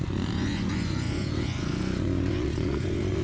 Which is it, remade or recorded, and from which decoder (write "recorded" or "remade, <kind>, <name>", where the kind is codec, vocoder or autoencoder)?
remade, vocoder, Vocos